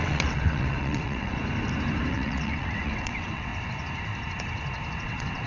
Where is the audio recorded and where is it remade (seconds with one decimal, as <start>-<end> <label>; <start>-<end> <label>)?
0.0-1.4 remade; 1.4-2.1 recorded; 2.1-3.5 remade; 3.5-4.9 recorded; 4.9-5.5 remade